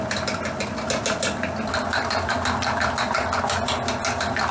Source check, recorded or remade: recorded